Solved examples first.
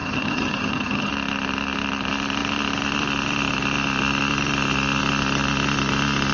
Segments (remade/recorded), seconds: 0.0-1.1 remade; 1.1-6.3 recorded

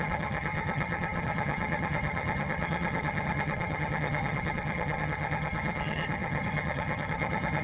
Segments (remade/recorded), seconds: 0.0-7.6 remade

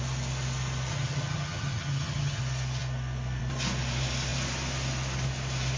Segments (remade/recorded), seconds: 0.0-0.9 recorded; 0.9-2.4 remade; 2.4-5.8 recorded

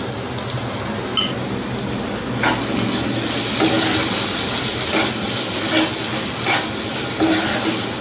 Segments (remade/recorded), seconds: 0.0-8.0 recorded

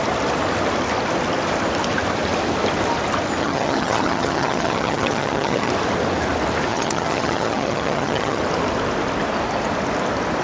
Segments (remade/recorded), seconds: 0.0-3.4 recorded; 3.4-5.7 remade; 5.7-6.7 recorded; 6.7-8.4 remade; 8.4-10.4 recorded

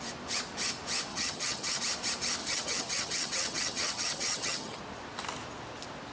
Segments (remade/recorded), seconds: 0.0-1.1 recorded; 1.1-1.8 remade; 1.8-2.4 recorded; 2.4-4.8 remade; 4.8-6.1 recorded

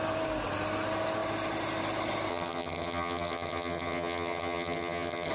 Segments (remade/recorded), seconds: 0.0-2.3 recorded; 2.3-5.3 remade